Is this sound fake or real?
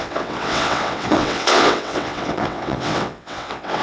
fake